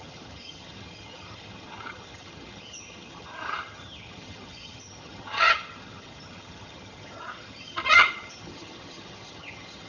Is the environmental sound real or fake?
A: fake